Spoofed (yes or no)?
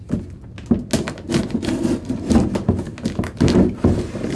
no